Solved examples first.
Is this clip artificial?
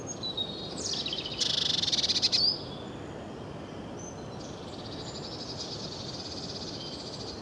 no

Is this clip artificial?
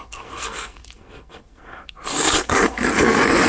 yes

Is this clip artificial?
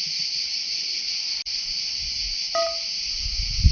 no